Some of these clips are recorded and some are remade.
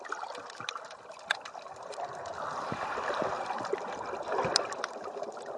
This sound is recorded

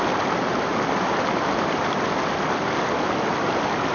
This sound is recorded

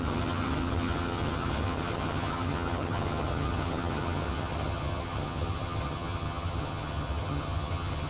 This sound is remade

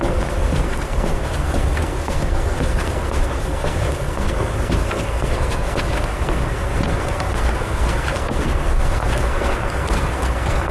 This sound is remade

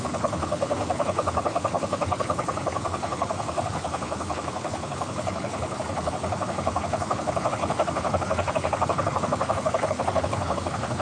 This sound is remade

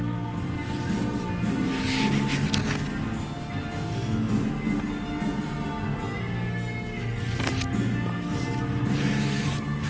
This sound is recorded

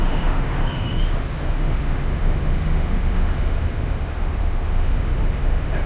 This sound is remade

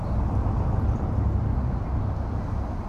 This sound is recorded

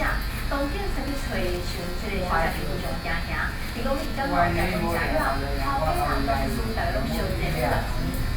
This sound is recorded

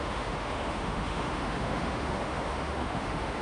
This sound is remade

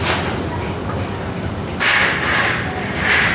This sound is recorded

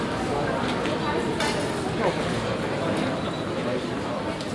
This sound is recorded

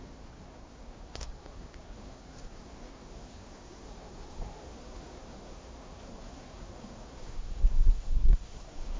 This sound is remade